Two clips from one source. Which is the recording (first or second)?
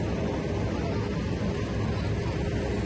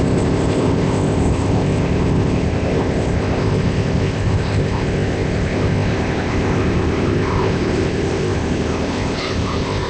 first